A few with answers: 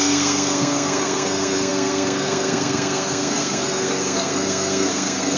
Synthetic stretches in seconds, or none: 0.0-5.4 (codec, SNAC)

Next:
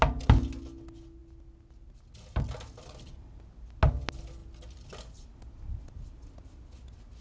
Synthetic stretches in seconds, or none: none

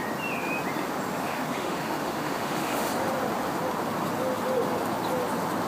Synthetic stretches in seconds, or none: 1.2-2.9 (autoencoder, DAC-VAE)

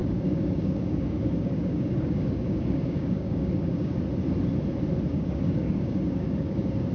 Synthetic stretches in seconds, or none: 0.0-4.0 (codec, DAC); 5.1-6.9

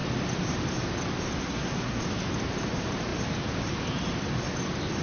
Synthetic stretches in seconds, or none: 1.4-2.0 (codec, SNAC)

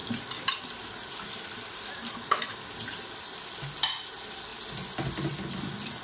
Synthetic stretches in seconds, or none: none

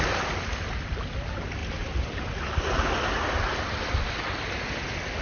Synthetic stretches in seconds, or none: none

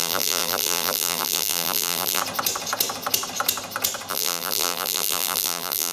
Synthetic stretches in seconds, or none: 0.0-2.2 (vocoder, BigVGAN v2); 4.1-5.9